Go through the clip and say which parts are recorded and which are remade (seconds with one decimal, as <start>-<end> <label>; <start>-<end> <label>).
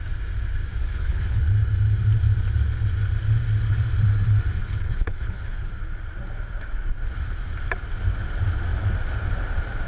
0.0-0.8 recorded; 0.8-1.4 remade; 1.4-4.6 recorded; 4.6-5.7 remade; 5.7-9.9 recorded